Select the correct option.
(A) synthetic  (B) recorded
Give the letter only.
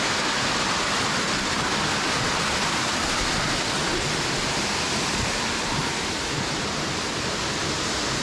B